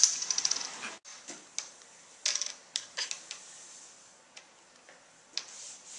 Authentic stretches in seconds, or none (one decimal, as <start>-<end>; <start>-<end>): 0.0-6.0